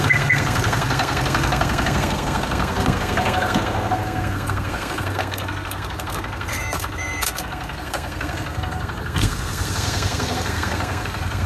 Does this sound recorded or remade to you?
remade